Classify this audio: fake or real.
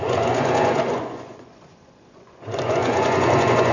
fake